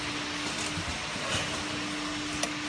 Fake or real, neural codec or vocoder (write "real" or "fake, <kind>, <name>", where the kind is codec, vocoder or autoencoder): real